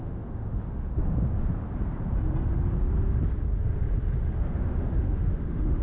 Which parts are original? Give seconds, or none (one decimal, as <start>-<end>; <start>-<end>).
0.9-4.4